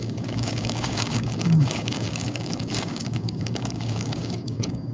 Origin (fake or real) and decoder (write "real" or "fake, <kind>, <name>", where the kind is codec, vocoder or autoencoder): fake, codec, DAC